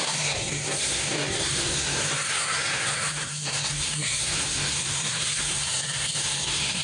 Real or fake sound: fake